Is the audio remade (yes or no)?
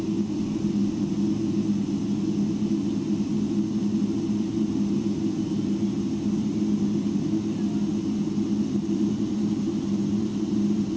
no